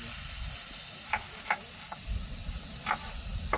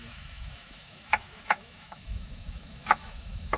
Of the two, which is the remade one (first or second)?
second